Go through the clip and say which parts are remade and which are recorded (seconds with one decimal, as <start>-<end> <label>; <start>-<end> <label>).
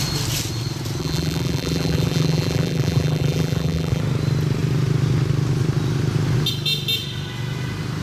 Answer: 0.0-1.0 recorded; 1.0-4.0 remade; 4.0-8.0 recorded